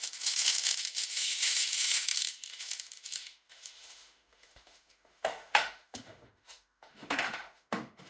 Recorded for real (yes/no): no